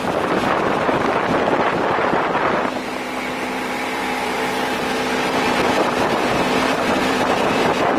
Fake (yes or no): yes